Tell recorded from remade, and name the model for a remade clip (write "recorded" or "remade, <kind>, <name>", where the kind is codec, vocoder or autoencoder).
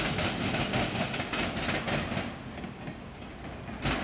recorded